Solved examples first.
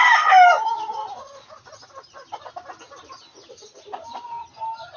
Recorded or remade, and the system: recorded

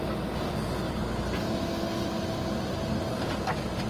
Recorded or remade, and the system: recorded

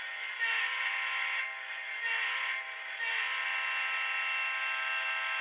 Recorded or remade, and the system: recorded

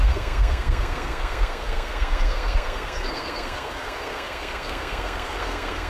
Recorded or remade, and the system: remade, codec, SNAC